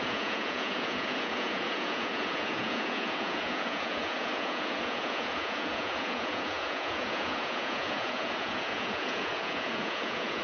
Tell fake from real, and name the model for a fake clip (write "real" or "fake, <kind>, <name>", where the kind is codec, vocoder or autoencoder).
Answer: fake, vocoder, Vocos